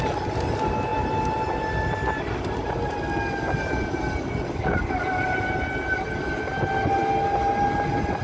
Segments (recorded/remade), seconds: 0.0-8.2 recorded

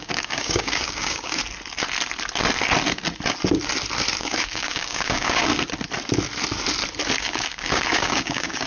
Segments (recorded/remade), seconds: 0.0-1.4 remade; 1.4-4.2 recorded; 4.2-5.5 remade; 5.5-7.2 recorded; 7.2-8.7 remade

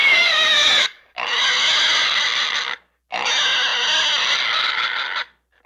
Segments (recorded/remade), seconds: 0.0-1.3 remade; 1.3-5.7 recorded

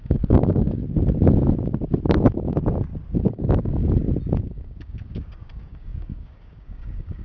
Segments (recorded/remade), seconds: 0.0-0.8 remade; 0.8-3.3 recorded; 3.3-3.8 remade; 3.8-4.5 recorded; 4.5-7.2 remade

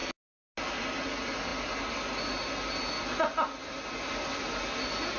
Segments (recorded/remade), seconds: 0.0-5.2 recorded

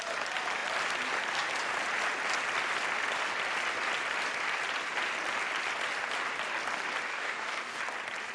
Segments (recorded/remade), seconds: 0.0-7.1 recorded; 7.1-7.8 remade; 7.8-8.3 recorded

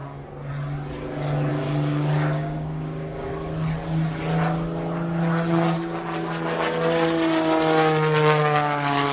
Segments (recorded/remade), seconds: 0.0-1.5 recorded; 1.5-3.3 remade; 3.3-9.1 recorded

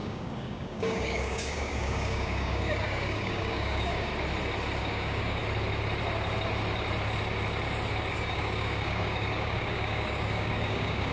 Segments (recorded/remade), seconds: 0.0-4.1 remade; 4.1-4.8 recorded; 4.8-5.4 remade; 5.4-8.1 recorded; 8.1-11.1 remade